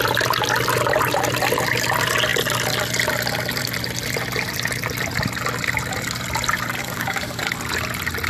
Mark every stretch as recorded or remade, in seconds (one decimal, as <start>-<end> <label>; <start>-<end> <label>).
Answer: 0.0-6.8 recorded; 6.8-7.4 remade; 7.4-8.3 recorded